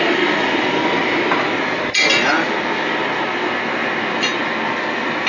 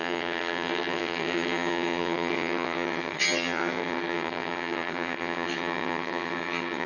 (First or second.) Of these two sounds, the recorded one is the first